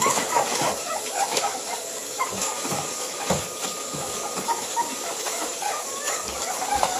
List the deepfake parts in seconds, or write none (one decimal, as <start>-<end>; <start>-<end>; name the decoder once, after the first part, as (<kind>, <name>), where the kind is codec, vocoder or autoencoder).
0.0-7.0 (codec, DAC)